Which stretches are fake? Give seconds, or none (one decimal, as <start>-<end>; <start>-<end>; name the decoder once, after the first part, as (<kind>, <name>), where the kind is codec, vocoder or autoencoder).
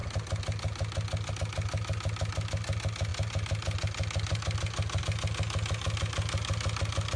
none